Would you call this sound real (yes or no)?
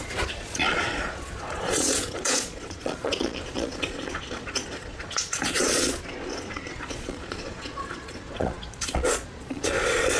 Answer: no